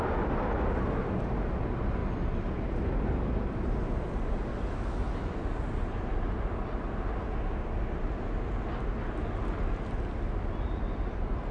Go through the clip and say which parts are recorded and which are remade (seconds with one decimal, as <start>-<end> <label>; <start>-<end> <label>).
0.0-11.5 recorded